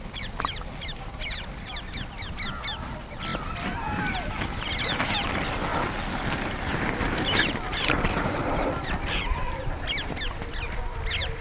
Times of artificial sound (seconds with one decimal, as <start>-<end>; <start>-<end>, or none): 0.0-3.3; 4.4-5.7; 7.4-11.4